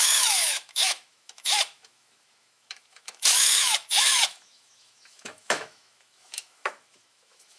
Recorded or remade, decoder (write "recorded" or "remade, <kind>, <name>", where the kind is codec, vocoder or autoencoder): remade, autoencoder, DAC-VAE